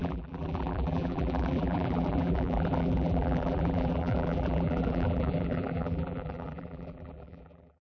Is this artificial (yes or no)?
yes